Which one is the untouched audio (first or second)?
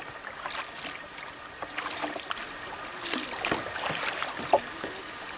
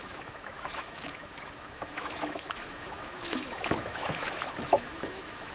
first